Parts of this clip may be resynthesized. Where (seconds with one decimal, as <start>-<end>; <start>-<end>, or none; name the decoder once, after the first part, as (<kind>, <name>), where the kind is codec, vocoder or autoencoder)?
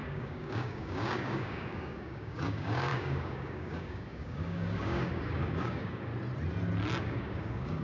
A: 0.0-6.1 (codec, DAC); 7.0-7.8